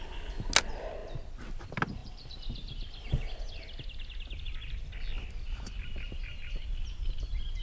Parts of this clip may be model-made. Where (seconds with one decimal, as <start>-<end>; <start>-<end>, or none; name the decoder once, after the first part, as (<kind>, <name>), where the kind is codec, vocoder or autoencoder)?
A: none